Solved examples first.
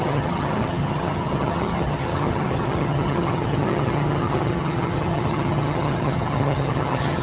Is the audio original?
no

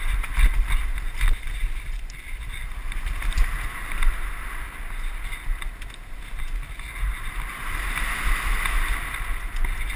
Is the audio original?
yes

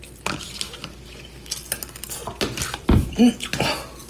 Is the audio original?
yes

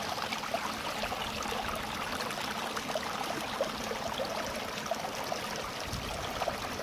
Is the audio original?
yes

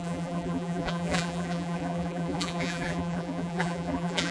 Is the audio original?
no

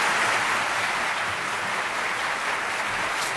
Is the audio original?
yes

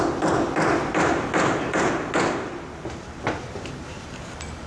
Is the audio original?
yes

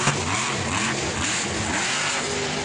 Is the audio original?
yes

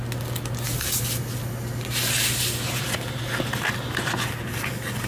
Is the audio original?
yes